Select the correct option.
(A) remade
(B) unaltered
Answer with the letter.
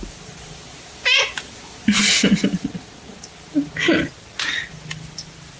B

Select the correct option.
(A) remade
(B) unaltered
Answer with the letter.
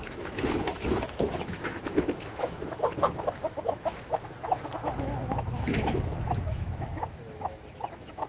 A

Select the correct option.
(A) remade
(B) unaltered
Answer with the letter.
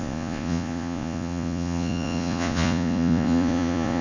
A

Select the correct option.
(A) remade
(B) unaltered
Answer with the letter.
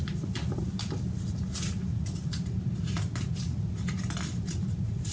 B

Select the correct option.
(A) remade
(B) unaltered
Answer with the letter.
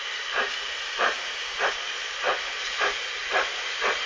A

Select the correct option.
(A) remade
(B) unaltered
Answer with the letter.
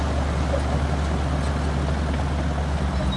B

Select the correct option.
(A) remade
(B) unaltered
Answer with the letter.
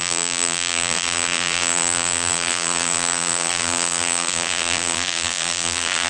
A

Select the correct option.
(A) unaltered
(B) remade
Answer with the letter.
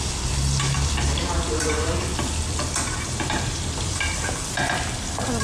B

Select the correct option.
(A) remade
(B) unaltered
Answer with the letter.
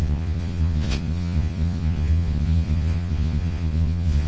A